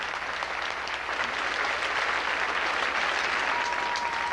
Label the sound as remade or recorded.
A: recorded